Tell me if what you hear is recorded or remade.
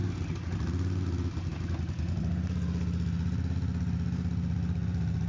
recorded